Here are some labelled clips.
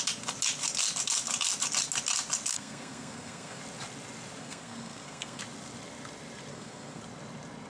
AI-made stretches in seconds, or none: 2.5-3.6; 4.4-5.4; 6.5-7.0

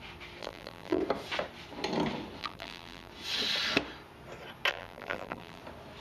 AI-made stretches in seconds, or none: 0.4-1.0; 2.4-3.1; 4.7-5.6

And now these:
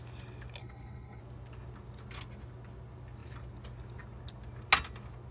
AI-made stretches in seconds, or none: 0.6-1.2

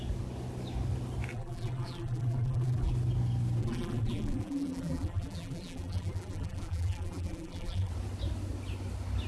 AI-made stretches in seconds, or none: 1.3-2.9; 3.6-7.9

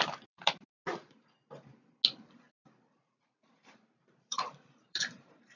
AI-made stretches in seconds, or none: 0.0-0.7; 2.5-5.6

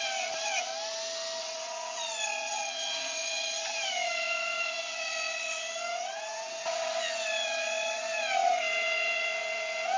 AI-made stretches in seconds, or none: 0.0-0.7; 1.4-10.0